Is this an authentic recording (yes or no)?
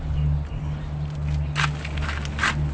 yes